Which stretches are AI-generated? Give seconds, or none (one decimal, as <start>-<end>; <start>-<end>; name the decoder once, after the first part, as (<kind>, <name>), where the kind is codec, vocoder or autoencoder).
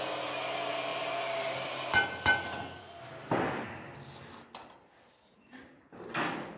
none